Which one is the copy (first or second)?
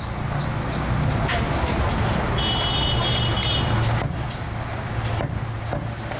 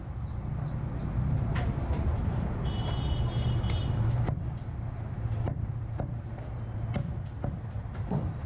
second